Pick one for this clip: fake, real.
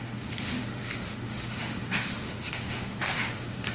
fake